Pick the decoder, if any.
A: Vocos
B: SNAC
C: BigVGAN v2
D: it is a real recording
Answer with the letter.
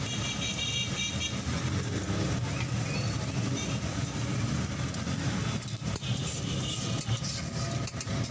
D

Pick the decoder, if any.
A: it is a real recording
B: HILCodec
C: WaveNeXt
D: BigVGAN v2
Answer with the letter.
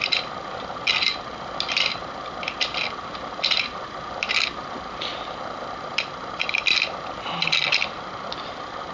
A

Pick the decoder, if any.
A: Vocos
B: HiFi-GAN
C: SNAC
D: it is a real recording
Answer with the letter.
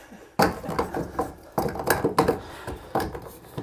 D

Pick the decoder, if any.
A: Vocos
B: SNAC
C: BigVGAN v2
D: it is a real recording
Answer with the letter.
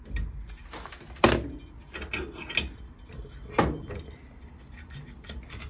D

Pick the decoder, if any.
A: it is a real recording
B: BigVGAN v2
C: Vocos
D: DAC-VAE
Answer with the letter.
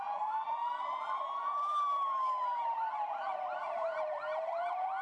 B